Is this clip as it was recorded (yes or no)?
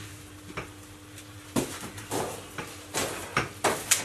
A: yes